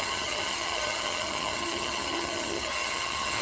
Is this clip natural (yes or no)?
no